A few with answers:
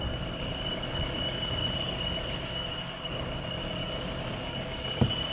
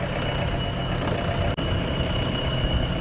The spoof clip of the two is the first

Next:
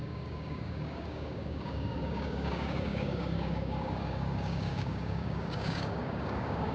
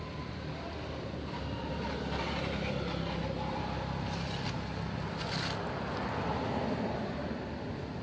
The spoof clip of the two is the first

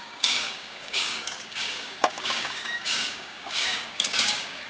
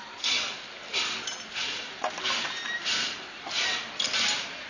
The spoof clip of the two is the first